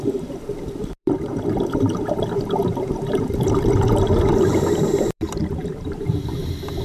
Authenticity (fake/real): fake